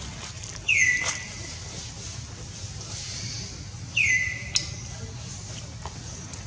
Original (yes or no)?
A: yes